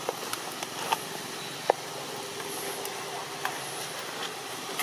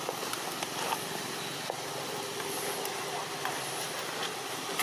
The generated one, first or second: second